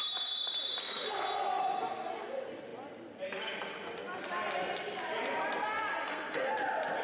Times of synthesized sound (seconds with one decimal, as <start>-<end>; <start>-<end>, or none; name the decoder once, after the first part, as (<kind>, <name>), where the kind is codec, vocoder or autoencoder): 0.8-1.6 (codec, SNAC); 5.9-6.5